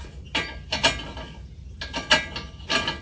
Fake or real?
real